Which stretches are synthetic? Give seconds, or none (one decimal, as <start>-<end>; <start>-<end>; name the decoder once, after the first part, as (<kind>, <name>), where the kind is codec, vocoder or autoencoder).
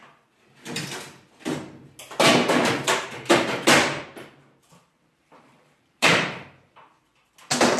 4.6-6.3 (vocoder, BigVGAN v2)